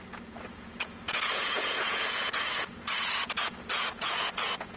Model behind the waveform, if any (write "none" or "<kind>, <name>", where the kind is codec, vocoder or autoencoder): vocoder, Vocos